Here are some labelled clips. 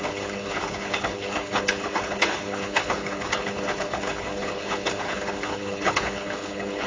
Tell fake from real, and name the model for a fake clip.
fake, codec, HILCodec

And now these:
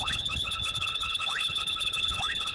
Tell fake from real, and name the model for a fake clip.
fake, codec, HILCodec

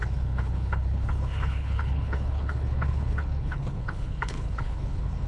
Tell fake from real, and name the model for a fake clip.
fake, codec, HILCodec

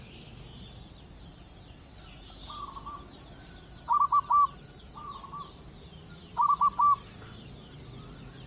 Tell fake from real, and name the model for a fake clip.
real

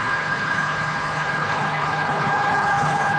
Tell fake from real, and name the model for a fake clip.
fake, codec, HILCodec